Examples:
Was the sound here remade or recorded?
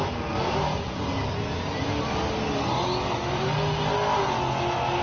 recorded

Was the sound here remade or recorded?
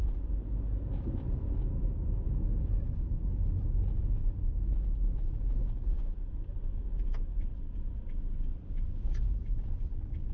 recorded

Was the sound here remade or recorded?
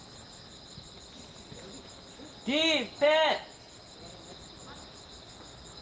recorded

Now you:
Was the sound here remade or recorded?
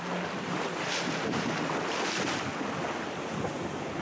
recorded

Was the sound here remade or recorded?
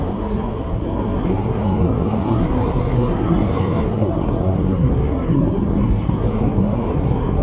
remade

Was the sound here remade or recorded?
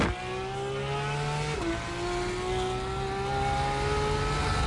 recorded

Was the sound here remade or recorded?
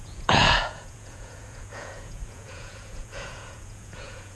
remade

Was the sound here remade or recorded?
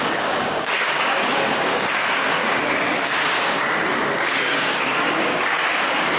remade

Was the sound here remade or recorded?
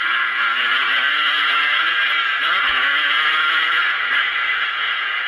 remade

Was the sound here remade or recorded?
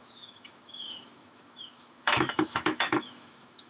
remade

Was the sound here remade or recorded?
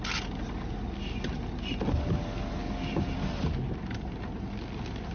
recorded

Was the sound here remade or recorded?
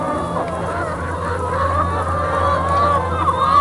recorded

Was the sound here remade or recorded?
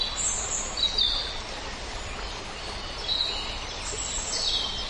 recorded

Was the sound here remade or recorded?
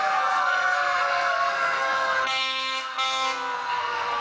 remade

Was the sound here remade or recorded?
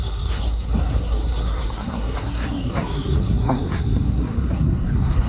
remade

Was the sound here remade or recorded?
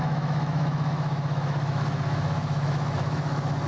remade